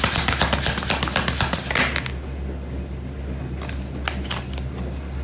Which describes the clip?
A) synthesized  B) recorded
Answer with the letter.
B